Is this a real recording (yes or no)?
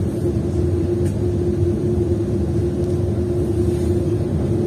yes